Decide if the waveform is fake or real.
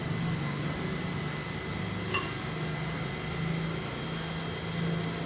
real